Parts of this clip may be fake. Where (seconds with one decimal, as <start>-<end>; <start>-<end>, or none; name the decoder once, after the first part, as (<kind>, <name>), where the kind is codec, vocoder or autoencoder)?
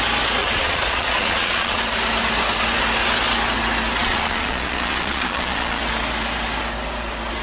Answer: 0.4-1.8 (vocoder, Vocos); 4.0-5.8